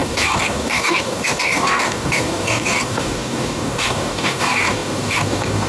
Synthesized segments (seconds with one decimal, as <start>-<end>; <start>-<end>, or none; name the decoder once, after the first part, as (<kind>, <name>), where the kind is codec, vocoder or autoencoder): 0.0-5.7 (codec, DAC)